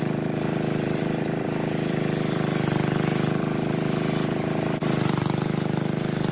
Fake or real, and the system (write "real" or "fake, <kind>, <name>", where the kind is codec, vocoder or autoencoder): fake, vocoder, BigVGAN v2